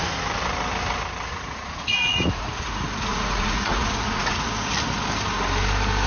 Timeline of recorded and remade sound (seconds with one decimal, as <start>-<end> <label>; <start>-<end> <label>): 0.0-1.3 recorded; 1.3-2.7 remade; 2.7-3.1 recorded; 3.1-4.5 remade; 4.5-6.1 recorded